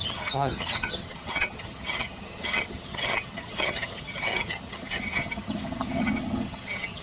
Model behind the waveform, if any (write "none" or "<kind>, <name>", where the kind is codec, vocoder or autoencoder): vocoder, HiFi-GAN